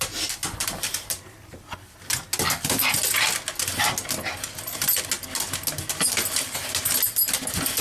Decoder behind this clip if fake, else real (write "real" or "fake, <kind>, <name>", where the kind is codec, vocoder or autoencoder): real